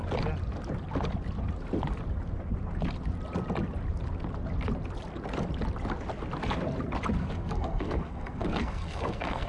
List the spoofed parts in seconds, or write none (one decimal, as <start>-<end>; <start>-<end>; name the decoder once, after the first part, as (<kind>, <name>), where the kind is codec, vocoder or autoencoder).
7.2-9.5 (codec, SNAC)